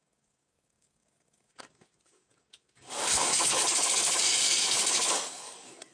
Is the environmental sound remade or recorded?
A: remade